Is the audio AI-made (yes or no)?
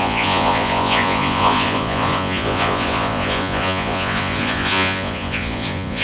yes